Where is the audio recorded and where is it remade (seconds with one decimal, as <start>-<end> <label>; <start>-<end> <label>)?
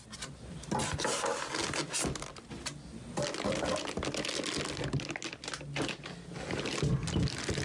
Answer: 0.0-7.6 recorded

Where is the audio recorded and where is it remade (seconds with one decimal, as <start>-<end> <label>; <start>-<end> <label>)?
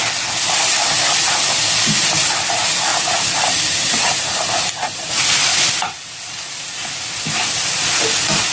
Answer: 0.0-8.5 recorded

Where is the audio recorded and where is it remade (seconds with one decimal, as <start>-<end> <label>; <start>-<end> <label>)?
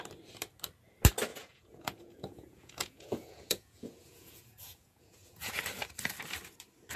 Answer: 0.0-1.3 recorded; 1.3-5.5 remade; 5.5-7.0 recorded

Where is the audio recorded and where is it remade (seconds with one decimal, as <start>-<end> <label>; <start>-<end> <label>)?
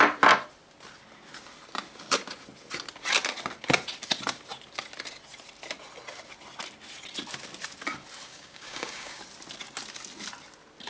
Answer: 0.0-8.3 recorded; 8.3-9.2 remade; 9.2-10.9 recorded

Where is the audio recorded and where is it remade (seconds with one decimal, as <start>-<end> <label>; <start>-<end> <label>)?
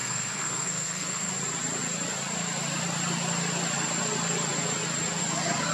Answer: 0.0-1.3 remade; 1.3-5.7 recorded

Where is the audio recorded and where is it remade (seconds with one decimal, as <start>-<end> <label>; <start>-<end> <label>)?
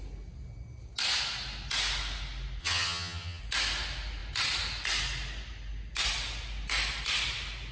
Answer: 0.0-2.6 recorded; 2.6-3.4 remade; 3.4-7.7 recorded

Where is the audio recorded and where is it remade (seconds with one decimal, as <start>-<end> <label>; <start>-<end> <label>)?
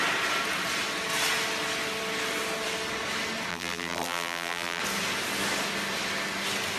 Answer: 0.0-3.5 recorded; 3.5-4.8 remade; 4.8-6.8 recorded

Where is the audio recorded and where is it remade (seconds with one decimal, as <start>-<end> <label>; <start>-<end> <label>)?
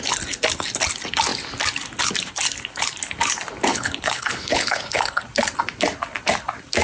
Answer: 0.0-3.7 recorded; 3.7-5.2 remade; 5.2-6.8 recorded